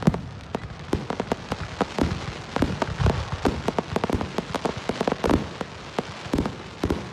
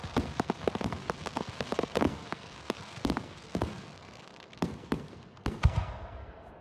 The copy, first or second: second